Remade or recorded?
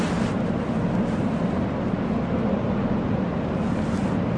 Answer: recorded